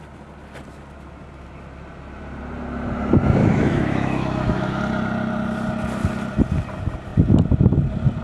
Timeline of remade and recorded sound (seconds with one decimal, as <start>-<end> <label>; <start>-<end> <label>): 0.0-3.4 recorded; 3.4-4.8 remade; 4.8-8.2 recorded